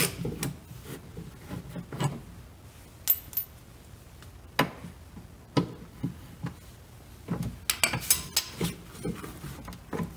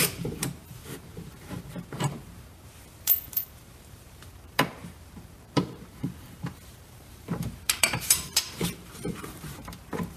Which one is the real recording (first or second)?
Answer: first